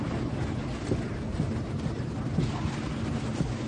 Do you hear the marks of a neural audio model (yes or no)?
no